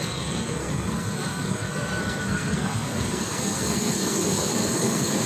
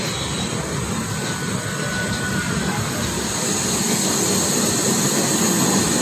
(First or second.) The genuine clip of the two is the second